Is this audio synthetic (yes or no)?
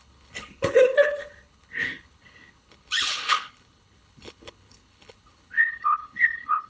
yes